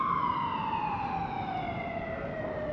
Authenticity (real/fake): real